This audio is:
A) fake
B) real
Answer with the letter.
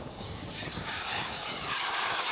A